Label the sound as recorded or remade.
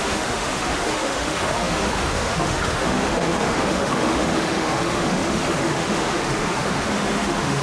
remade